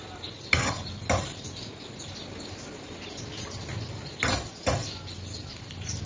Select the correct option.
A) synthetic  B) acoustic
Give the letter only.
B